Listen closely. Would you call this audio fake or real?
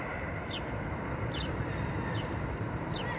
real